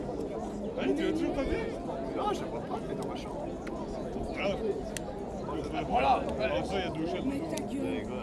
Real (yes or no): yes